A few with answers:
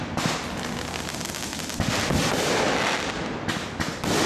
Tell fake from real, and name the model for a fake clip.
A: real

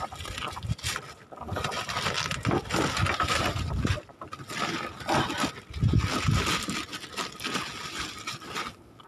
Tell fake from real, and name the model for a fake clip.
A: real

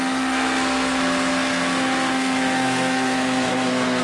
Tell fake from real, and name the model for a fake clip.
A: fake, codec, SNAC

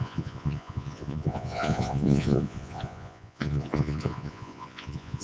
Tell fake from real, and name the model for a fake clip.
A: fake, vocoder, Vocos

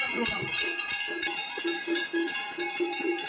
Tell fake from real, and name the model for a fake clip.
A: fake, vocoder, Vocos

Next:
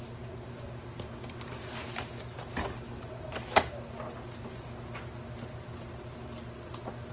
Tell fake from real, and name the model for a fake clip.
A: real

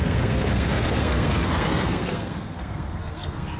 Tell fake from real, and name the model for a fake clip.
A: fake, codec, SNAC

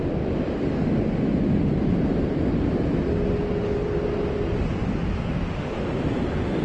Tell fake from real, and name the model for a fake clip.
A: real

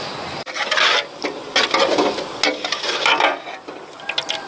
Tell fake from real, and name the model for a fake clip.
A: real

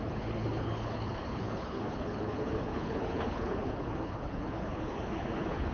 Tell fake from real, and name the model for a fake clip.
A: fake, codec, HILCodec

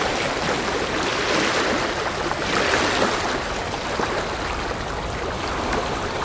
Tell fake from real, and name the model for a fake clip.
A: real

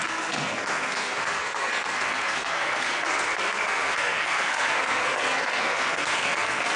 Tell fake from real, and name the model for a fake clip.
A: fake, codec, SNAC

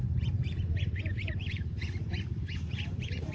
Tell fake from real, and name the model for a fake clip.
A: fake, vocoder, Vocos